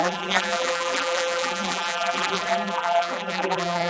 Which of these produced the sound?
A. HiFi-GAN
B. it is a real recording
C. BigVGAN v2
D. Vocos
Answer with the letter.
C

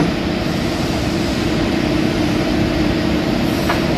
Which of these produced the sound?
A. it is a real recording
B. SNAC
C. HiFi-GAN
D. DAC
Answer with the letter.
A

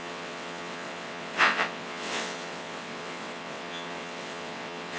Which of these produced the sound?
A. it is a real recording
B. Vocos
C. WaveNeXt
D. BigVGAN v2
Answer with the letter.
C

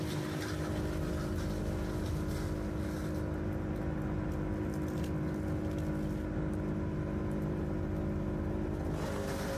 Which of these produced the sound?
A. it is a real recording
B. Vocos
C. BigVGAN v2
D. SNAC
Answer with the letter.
A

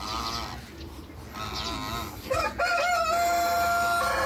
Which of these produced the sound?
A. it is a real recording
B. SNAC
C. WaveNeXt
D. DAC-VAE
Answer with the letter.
A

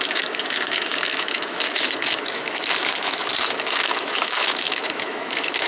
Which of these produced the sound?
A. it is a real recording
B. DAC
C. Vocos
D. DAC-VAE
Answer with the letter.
D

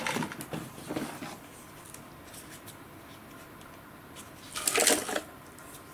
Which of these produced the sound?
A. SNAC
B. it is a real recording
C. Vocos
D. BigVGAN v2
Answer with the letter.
B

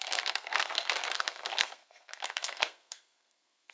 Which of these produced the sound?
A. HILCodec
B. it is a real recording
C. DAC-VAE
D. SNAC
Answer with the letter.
D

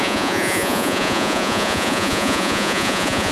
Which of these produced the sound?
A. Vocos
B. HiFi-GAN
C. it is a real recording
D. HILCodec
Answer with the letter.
A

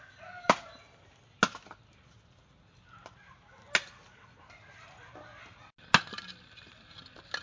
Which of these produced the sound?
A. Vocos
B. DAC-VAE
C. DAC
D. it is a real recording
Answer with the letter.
D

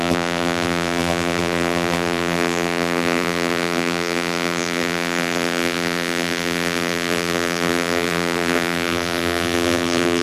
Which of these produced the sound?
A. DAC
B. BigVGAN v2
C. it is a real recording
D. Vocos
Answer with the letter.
B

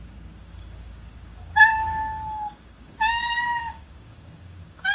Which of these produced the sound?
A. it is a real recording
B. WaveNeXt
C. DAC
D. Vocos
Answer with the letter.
C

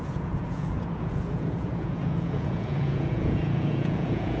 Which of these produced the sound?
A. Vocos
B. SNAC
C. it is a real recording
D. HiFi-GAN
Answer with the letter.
A